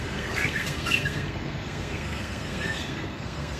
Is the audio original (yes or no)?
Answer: no